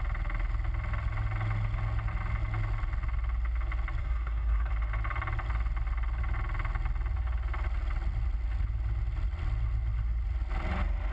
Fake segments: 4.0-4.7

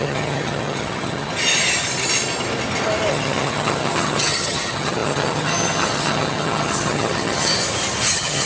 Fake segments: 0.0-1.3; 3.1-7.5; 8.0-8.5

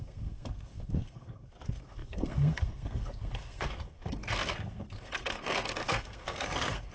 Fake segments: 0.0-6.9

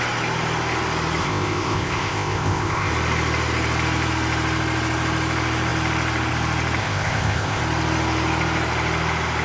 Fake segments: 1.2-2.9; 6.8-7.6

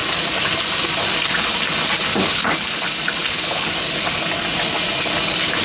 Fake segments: 2.2-2.8; 3.2-3.7

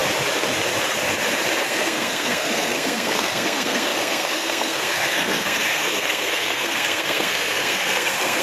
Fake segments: 1.6-8.4